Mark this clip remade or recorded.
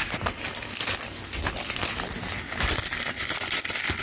recorded